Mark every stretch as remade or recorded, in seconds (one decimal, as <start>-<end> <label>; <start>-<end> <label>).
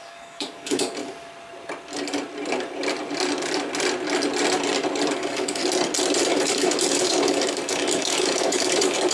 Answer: 0.0-1.0 remade; 1.0-5.1 recorded; 5.1-5.6 remade; 5.6-6.3 recorded; 6.3-9.1 remade